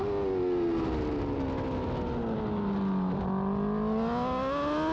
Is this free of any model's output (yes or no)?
yes